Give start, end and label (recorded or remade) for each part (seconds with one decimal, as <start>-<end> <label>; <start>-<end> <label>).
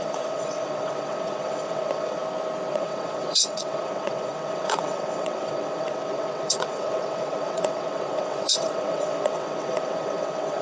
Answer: 0.0-2.2 remade; 2.2-2.7 recorded; 2.7-10.6 remade